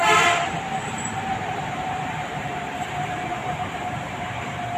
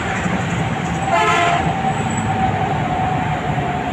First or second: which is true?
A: second